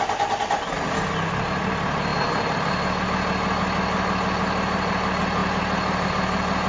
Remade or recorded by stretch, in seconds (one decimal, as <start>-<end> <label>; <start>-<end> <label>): 0.0-6.7 recorded